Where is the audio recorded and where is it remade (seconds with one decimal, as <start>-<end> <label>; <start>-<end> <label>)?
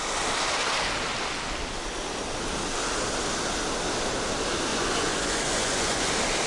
0.0-4.7 recorded; 4.7-6.1 remade; 6.1-6.5 recorded